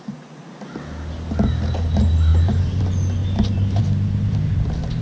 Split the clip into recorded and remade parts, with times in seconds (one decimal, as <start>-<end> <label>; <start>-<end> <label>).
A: 0.0-2.3 recorded; 2.3-2.8 remade; 2.8-3.2 recorded; 3.2-3.8 remade; 3.8-5.0 recorded